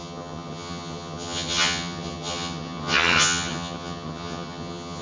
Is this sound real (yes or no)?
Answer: no